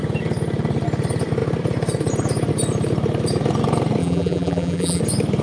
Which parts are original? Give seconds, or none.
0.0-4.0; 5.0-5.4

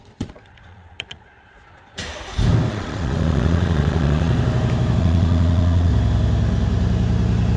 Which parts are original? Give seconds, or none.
2.0-2.7; 4.3-5.0; 5.9-7.6

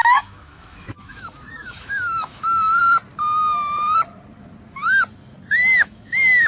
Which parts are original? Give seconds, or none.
2.8-5.6